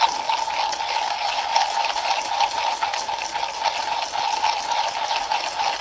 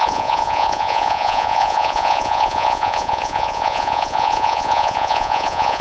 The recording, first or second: first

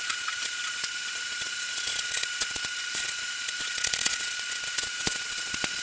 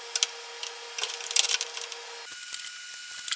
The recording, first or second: second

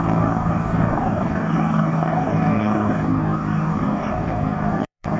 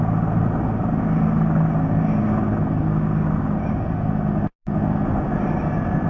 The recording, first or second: second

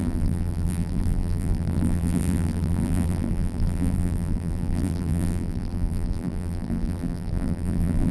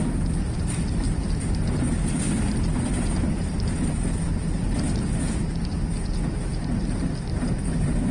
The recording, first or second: second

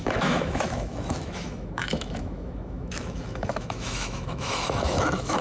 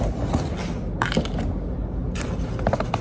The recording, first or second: second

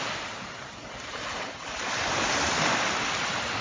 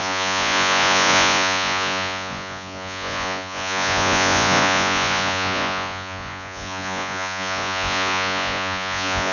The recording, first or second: first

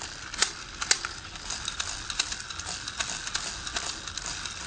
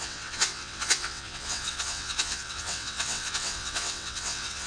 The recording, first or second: first